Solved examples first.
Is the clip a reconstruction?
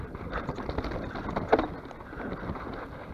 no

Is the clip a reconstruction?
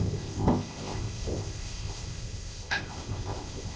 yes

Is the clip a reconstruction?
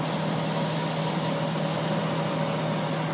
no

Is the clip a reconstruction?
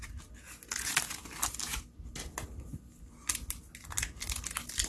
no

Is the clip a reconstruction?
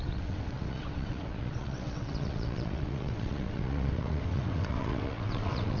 yes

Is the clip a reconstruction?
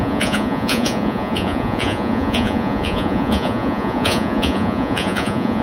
yes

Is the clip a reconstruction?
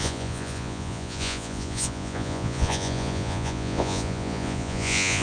yes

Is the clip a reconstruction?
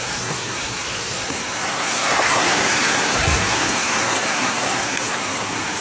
yes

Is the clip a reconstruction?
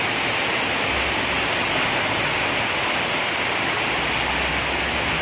no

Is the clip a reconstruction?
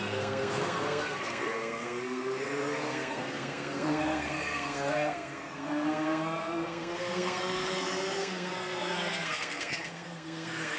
yes